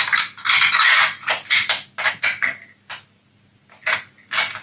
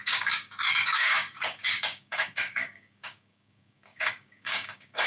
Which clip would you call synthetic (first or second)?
second